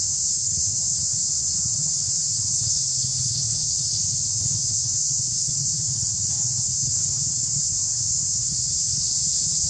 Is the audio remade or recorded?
remade